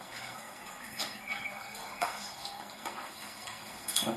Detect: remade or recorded remade